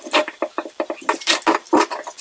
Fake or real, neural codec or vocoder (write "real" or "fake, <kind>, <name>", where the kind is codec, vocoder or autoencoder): real